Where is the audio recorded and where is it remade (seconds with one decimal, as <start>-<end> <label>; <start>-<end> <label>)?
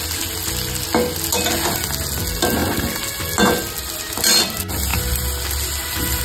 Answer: 0.0-6.2 recorded